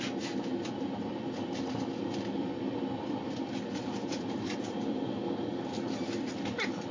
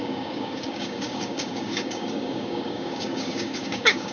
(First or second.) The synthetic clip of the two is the second